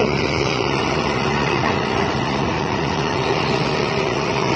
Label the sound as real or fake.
fake